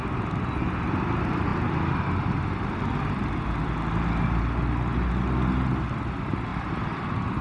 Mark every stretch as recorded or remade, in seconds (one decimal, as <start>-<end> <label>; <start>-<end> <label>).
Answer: 0.0-7.4 recorded

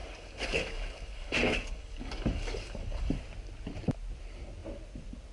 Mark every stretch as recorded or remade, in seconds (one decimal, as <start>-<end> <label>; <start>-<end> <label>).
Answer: 0.0-3.2 remade; 3.2-5.3 recorded

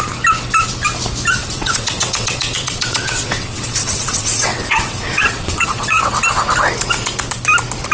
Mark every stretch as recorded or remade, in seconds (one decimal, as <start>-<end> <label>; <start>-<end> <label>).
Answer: 0.0-1.4 recorded; 1.4-6.1 remade; 6.1-7.9 recorded

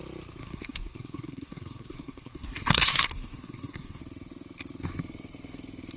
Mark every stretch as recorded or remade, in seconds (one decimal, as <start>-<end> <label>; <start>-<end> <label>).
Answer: 0.0-0.4 recorded; 0.4-4.0 remade; 4.0-6.0 recorded

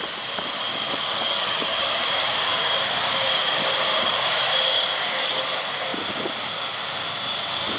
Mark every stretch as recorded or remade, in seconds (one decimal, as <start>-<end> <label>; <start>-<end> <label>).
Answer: 0.0-0.7 recorded; 0.7-5.4 remade; 5.4-7.8 recorded

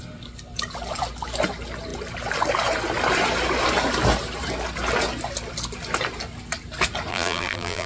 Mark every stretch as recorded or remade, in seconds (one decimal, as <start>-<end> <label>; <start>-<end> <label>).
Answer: 0.0-7.1 recorded; 7.1-7.9 remade

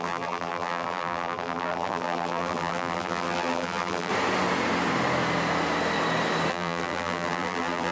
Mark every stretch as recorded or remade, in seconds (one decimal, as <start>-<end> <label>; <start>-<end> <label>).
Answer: 0.0-4.1 remade; 4.1-6.5 recorded; 6.5-7.9 remade